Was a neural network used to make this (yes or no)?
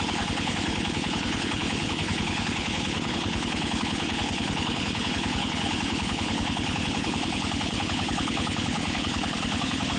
yes